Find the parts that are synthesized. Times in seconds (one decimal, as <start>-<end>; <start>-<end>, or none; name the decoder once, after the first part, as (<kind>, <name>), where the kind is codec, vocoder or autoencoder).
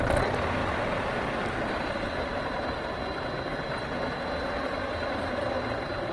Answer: none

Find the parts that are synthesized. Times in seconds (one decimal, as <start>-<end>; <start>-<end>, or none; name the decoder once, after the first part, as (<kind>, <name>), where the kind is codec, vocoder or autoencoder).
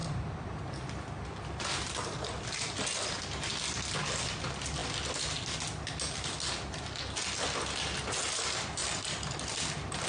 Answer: 0.0-3.2 (vocoder, BigVGAN v2); 8.8-9.7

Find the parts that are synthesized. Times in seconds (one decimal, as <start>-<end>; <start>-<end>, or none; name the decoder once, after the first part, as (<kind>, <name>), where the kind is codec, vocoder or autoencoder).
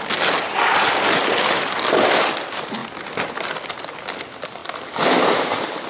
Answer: none